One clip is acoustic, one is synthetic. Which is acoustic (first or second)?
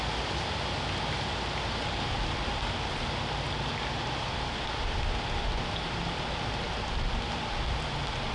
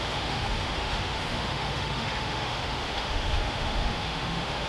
first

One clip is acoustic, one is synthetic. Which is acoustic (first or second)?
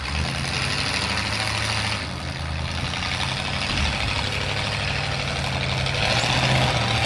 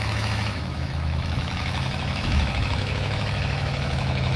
first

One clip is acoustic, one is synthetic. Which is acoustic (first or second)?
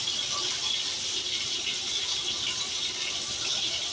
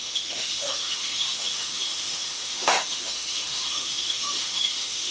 first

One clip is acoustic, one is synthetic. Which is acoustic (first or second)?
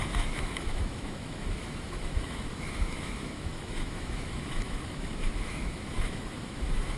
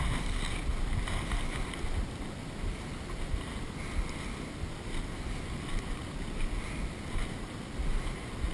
second